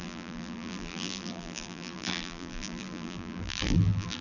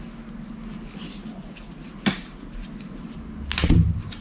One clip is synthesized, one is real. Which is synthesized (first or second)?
first